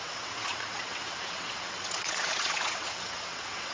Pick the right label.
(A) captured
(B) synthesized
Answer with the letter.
B